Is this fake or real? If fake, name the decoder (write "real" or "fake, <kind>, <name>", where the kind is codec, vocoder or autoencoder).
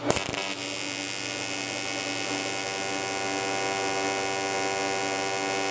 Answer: real